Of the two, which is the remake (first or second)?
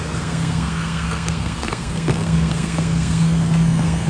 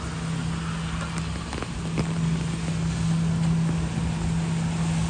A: first